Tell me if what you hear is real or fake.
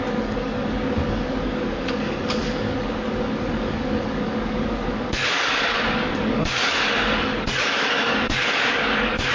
fake